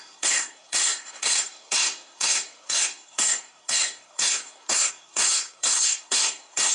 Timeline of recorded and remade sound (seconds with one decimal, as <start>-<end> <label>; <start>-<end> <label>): 0.0-6.7 remade